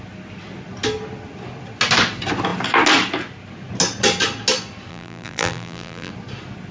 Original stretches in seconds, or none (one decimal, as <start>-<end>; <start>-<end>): 0.0-4.9; 6.1-6.7